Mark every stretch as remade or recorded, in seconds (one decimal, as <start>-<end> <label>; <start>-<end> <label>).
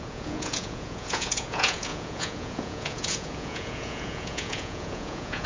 0.0-5.5 remade